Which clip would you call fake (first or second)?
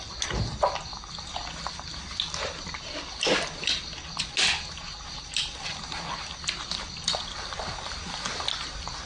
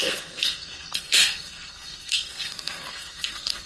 second